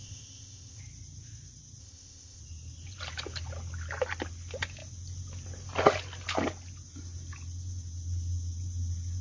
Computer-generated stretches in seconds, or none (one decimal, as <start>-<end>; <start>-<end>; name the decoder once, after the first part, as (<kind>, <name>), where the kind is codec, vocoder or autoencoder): 0.0-0.8 (codec, ZipCodec); 1.8-2.4